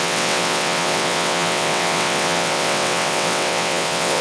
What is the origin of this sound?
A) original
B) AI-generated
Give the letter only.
B